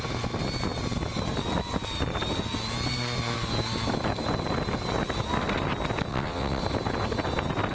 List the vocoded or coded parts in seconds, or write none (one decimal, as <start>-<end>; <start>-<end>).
6.1-6.6